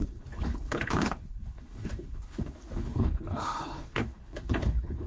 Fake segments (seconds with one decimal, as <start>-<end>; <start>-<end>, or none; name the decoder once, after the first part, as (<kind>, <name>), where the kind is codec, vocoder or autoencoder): 0.0-5.1 (codec, HILCodec)